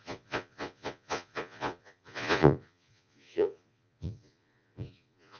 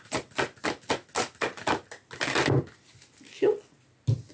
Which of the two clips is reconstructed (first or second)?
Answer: first